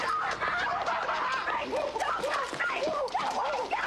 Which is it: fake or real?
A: real